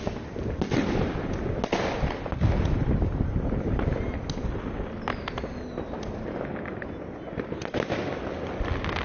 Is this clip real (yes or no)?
yes